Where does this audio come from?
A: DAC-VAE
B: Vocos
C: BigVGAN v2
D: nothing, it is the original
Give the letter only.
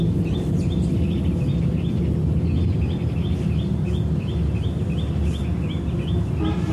D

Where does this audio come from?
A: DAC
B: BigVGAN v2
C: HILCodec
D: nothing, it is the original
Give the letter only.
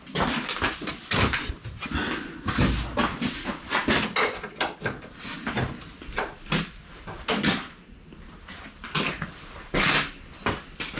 D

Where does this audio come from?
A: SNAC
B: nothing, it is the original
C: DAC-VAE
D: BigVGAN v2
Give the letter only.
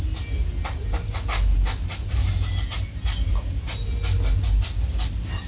B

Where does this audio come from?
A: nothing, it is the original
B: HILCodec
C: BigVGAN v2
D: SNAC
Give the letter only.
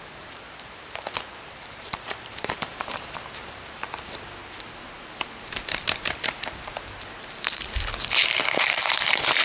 C